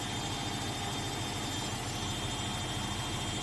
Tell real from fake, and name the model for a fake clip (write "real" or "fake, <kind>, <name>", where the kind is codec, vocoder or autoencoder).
real